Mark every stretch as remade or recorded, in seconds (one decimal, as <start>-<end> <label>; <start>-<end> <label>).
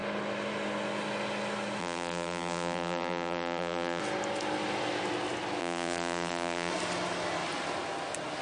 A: 0.0-1.8 recorded; 1.8-4.0 remade; 4.0-5.6 recorded; 5.6-6.7 remade; 6.7-8.4 recorded